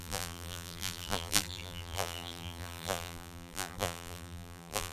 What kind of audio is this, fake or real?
fake